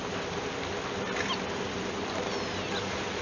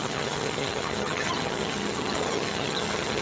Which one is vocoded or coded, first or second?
second